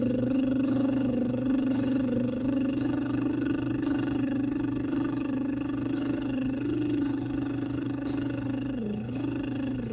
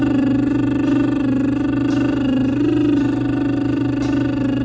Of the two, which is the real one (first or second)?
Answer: second